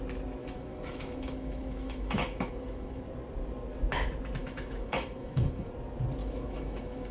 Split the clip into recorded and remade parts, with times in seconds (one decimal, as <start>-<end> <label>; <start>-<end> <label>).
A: 0.0-0.4 recorded; 0.4-3.0 remade; 3.0-4.4 recorded; 4.4-5.7 remade; 5.7-6.2 recorded; 6.2-7.1 remade